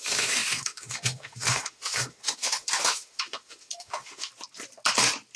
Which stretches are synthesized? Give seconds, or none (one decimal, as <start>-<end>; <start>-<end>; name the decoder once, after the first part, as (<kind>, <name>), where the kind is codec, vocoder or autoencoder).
0.0-4.3 (autoencoder, DAC-VAE)